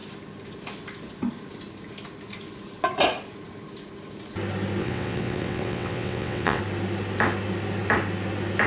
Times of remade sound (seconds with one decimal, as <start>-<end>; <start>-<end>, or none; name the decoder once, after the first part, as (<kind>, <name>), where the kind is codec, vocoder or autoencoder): 4.8-6.6 (vocoder, WaveNeXt)